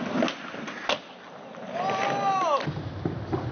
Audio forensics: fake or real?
real